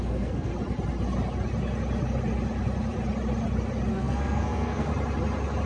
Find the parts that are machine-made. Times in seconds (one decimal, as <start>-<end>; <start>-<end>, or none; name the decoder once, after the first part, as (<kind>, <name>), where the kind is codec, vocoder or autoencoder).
0.0-0.5 (codec, SNAC); 3.9-4.9